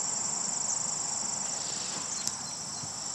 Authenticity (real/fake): real